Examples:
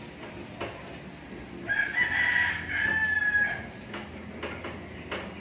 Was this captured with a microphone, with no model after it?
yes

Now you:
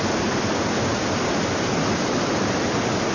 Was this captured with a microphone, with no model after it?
yes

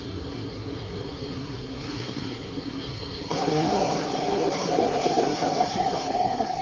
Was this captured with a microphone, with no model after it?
no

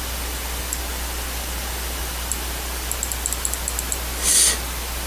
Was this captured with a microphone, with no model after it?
yes